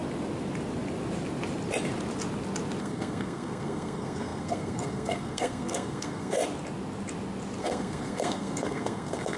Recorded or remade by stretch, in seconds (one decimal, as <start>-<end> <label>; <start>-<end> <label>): 0.0-2.8 recorded; 2.8-6.4 remade; 6.4-7.6 recorded; 7.6-9.4 remade